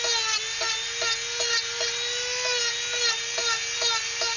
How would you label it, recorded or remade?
recorded